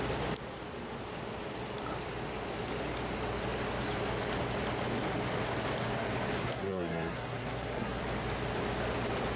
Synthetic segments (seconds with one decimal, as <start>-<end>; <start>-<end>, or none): 6.4-8.0